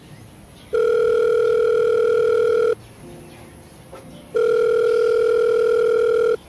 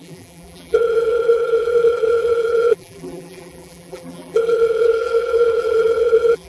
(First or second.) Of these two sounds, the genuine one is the first